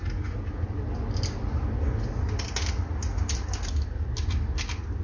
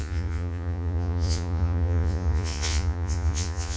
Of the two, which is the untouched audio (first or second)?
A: first